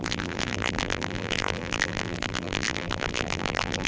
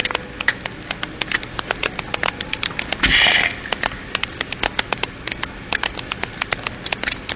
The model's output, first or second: first